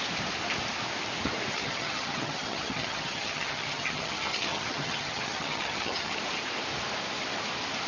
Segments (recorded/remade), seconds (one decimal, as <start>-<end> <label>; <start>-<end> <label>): 0.0-1.5 recorded; 1.5-6.2 remade; 6.2-7.9 recorded